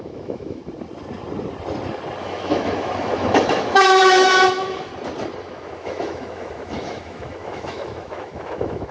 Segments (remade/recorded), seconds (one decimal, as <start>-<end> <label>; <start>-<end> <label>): 0.0-0.6 remade; 0.6-2.2 recorded; 2.2-4.9 remade; 4.9-5.4 recorded; 5.4-8.9 remade